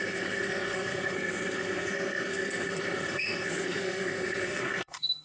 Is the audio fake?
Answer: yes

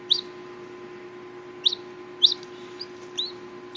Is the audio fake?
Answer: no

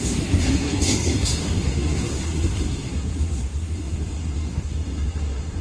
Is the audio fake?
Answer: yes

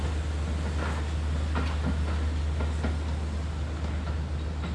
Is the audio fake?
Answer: no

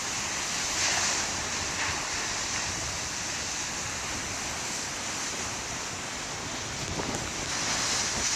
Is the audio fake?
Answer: no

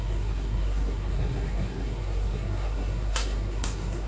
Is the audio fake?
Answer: yes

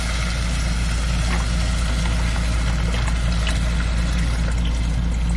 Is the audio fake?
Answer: no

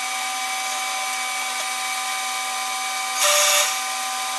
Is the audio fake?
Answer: no